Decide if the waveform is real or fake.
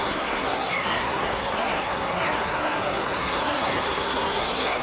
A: fake